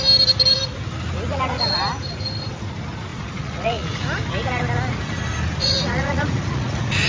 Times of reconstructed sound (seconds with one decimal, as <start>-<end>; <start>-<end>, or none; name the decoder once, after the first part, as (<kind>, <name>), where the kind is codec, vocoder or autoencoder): 1.3-1.8 (vocoder, Vocos); 3.1-4.0; 5.6-7.1